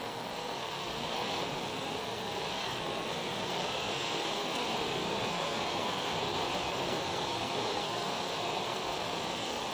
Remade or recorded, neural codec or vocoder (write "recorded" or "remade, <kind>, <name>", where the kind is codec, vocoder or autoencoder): remade, codec, SNAC